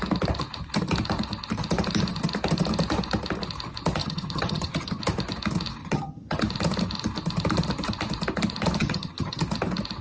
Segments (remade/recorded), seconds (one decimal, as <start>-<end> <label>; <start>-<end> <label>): 0.0-4.0 recorded; 4.0-5.0 remade; 5.0-5.8 recorded; 5.8-6.4 remade; 6.4-8.8 recorded; 8.8-9.4 remade; 9.4-10.0 recorded